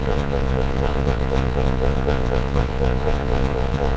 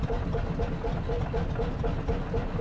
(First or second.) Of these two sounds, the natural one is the second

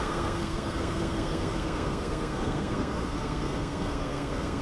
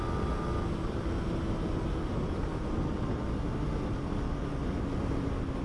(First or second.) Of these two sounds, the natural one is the second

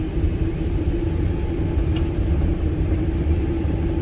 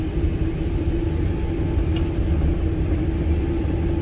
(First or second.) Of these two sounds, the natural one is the second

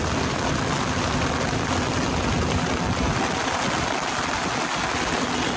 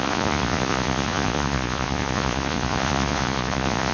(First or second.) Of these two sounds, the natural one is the first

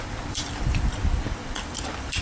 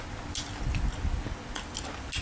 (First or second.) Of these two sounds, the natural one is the second